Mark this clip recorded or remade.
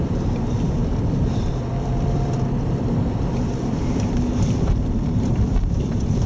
remade